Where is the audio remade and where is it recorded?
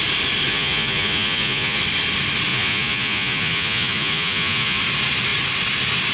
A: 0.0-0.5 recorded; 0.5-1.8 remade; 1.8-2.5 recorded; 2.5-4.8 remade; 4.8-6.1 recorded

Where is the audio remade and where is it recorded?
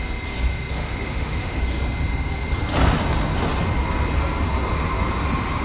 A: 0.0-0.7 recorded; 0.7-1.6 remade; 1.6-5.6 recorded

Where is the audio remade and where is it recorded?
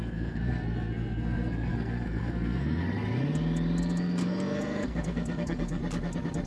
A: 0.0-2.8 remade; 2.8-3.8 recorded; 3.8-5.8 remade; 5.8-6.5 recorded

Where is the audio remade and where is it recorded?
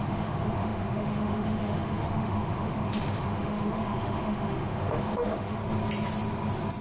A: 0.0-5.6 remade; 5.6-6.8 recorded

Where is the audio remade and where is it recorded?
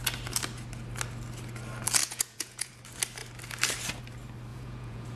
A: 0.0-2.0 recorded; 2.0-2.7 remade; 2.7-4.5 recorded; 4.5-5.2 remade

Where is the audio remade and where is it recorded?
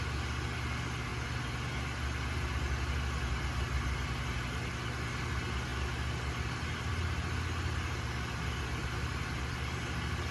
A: 0.0-8.8 recorded; 8.8-9.8 remade; 9.8-10.3 recorded